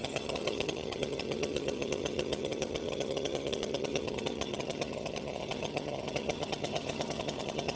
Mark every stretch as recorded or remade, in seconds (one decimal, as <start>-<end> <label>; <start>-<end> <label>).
0.0-7.8 remade